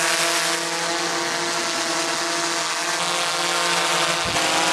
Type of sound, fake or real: real